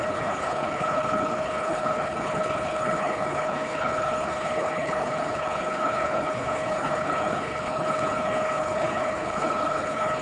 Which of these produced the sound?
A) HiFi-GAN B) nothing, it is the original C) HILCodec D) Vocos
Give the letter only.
C